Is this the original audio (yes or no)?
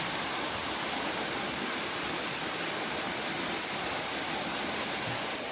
no